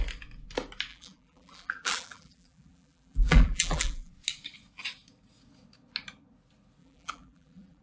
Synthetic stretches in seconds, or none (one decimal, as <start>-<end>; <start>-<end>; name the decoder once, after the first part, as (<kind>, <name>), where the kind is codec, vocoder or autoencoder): 0.9-4.1 (vocoder, BigVGAN v2); 6.8-7.8